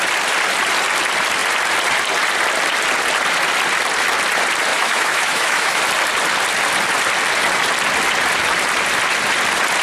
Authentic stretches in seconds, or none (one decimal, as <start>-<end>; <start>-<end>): 0.0-4.7; 5.8-9.8